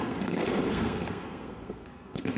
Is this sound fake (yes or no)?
yes